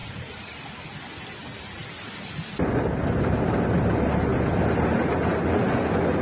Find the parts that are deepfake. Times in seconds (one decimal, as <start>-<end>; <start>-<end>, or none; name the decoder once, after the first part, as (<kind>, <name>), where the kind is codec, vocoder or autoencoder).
0.0-0.7 (vocoder, BigVGAN v2); 4.3-6.2